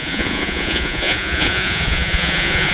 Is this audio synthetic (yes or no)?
yes